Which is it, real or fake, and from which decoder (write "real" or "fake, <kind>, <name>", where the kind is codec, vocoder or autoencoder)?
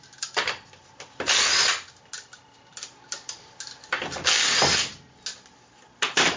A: real